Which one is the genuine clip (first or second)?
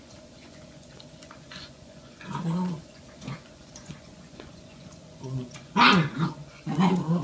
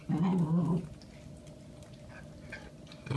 second